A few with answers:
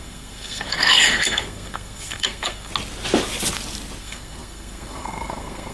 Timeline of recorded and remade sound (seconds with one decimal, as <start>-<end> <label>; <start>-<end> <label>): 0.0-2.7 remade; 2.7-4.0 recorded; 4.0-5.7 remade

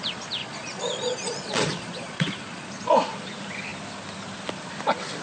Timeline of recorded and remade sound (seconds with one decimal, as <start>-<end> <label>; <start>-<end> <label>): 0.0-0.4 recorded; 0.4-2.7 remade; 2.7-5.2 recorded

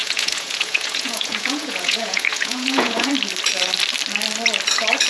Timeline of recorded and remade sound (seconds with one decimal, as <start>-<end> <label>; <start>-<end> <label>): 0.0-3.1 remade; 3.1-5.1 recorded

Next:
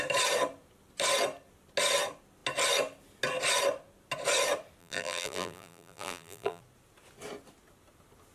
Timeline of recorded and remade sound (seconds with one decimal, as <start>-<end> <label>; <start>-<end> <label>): 0.0-4.8 recorded; 4.8-6.6 remade; 6.6-8.3 recorded